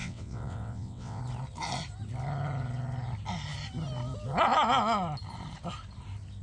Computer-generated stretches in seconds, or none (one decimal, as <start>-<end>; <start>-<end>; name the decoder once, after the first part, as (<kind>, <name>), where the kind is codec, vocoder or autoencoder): 0.0-1.2 (vocoder, WaveNeXt)